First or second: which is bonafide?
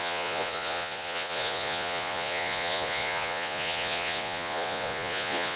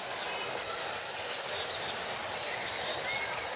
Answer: second